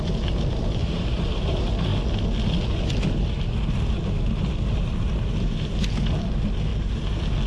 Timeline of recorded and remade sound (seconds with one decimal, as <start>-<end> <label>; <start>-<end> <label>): 0.0-0.8 recorded; 0.8-1.4 remade; 1.4-7.5 recorded